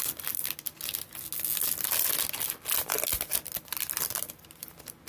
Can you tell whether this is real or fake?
real